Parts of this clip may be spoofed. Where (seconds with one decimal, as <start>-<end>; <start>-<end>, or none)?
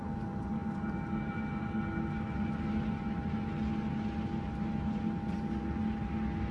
none